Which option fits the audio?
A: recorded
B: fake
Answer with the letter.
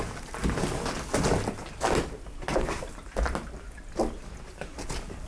A